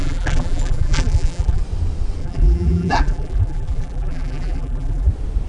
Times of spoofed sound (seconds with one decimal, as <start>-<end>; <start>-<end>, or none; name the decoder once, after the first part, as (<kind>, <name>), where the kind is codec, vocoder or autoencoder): 0.0-1.6 (vocoder, BigVGAN v2); 2.2-5.1